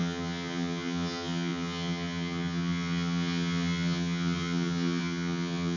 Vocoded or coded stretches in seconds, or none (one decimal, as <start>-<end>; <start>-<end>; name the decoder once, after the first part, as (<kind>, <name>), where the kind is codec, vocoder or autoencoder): 0.0-5.8 (vocoder, HiFi-GAN)